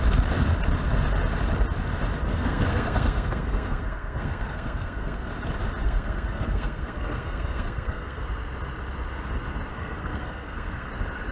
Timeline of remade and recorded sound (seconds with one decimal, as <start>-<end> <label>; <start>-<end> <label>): 0.0-2.3 recorded; 2.3-5.3 remade; 5.3-5.8 recorded; 5.8-8.2 remade; 8.2-9.7 recorded; 9.7-10.9 remade; 10.9-11.3 recorded